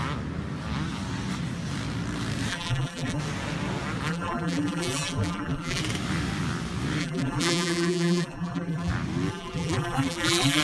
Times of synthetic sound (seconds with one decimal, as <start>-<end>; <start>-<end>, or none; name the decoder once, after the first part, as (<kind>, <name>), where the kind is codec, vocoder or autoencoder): 2.5-3.2 (vocoder, BigVGAN v2); 4.1-5.8; 7.0-8.9; 9.3-10.6